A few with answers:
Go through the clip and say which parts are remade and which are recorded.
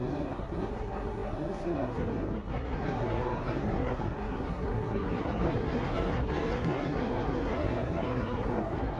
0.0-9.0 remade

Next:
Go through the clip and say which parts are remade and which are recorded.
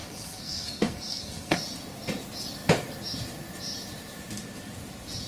0.0-1.6 remade; 1.6-5.3 recorded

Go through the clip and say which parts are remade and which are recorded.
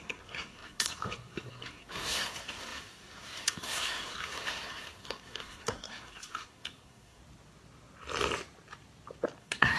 0.0-7.2 remade; 7.2-9.4 recorded; 9.4-9.8 remade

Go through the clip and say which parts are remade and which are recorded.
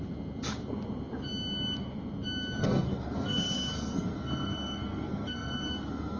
0.0-2.6 recorded; 2.6-6.2 remade